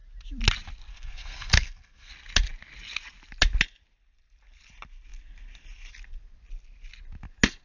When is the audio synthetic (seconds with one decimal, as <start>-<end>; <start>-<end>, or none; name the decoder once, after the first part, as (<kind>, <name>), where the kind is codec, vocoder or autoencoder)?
0.9-2.1 (codec, SNAC)